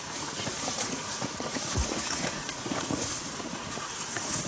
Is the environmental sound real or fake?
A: fake